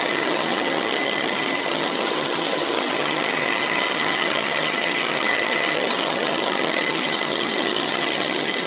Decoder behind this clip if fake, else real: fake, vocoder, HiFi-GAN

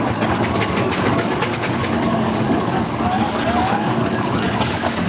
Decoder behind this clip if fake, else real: fake, codec, DAC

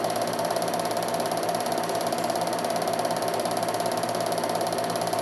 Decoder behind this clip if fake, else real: real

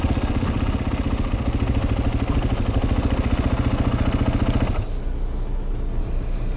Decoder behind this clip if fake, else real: real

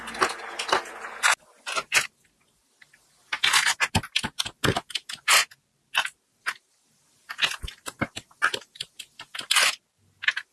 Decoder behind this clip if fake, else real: real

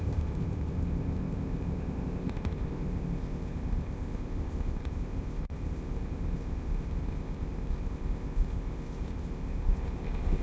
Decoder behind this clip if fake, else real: fake, codec, ZipCodec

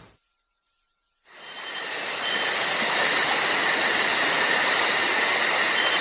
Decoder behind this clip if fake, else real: real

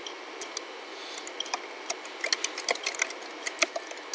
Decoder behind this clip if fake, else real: real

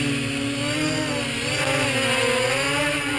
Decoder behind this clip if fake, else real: real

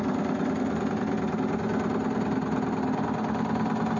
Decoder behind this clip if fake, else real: real